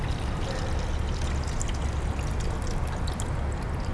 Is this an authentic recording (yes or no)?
yes